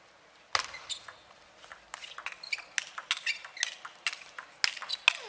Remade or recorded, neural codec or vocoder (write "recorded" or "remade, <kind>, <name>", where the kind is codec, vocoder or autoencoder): recorded